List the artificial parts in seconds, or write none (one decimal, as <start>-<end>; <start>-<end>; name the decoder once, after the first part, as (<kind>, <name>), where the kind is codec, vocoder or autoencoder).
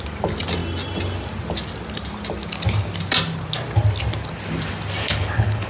5.0-5.7 (codec, HILCodec)